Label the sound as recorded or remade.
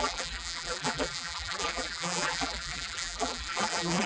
remade